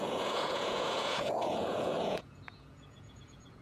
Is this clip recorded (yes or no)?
no